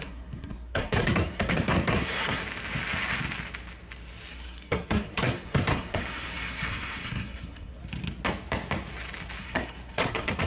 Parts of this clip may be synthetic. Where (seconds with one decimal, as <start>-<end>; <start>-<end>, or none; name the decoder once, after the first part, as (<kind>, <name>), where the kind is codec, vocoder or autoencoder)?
0.0-2.4 (codec, SNAC); 4.3-7.8; 9.4-10.5